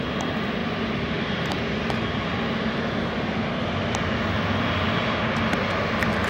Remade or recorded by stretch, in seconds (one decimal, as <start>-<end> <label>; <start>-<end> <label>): 0.0-0.6 recorded; 0.6-2.9 remade; 2.9-6.3 recorded